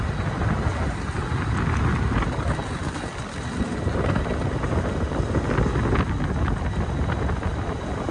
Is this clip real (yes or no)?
yes